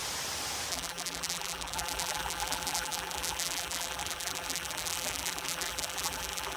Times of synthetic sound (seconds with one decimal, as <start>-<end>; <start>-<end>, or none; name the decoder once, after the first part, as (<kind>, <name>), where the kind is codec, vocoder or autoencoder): 0.7-6.6 (vocoder, BigVGAN v2)